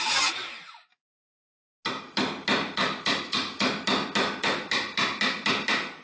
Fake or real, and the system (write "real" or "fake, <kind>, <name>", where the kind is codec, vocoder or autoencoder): real